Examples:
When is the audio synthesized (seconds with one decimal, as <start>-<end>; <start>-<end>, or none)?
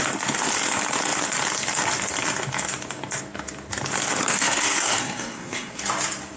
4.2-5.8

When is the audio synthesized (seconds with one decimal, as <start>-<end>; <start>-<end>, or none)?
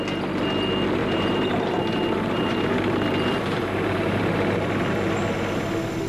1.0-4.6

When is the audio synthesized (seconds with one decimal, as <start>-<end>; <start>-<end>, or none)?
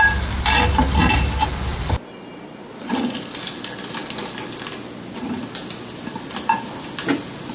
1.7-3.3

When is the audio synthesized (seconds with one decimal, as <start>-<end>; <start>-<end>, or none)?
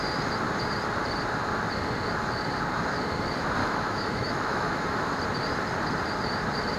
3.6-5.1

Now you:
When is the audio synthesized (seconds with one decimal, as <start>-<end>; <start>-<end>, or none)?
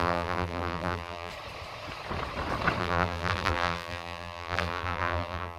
0.0-1.3; 2.8-5.6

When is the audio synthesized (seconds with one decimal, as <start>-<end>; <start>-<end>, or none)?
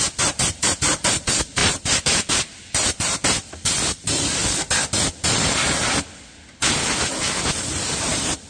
0.5-4.4; 7.6-8.5